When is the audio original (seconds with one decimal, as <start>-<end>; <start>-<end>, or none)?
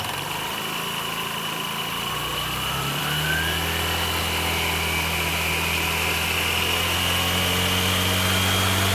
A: 0.0-8.9